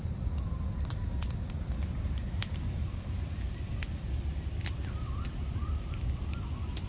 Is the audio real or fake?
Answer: real